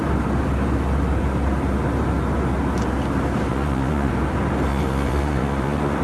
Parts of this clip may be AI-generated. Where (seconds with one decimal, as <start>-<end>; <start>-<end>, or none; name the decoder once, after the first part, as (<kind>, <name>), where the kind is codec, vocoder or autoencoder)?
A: 3.5-4.1 (vocoder, Vocos); 4.7-6.0